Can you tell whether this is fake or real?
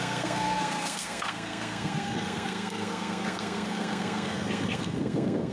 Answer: fake